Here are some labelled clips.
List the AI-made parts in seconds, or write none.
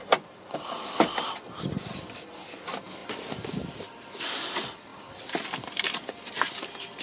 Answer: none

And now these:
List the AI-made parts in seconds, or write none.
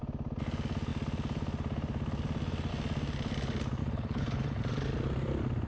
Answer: 3.8-4.6 (codec, HILCodec)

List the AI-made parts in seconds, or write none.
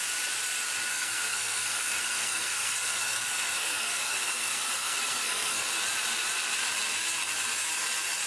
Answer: 0.9-5.7 (codec, SNAC)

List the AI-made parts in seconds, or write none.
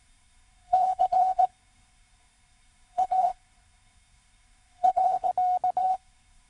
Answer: 0.0-5.3 (codec, SNAC); 5.8-6.5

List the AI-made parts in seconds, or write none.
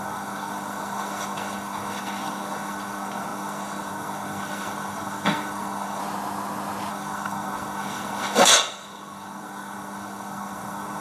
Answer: 0.0-6.0 (codec, SNAC); 6.9-11.0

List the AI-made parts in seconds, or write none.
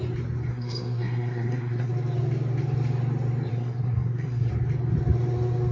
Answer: 0.5-1.9 (codec, SNAC); 3.5-4.5